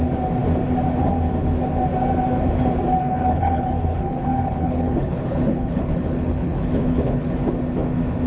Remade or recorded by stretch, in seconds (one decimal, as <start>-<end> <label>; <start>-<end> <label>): 0.0-3.0 recorded; 3.0-7.3 remade; 7.3-8.3 recorded